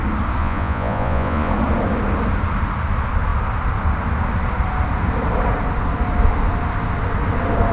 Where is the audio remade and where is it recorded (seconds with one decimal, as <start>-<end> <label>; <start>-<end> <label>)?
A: 0.0-0.4 recorded; 0.4-1.5 remade; 1.5-7.7 recorded